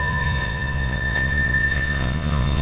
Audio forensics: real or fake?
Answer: fake